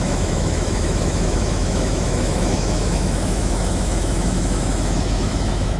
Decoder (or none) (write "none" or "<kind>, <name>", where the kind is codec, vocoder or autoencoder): autoencoder, DAC-VAE